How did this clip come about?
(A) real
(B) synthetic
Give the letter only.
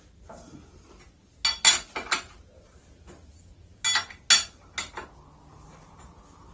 A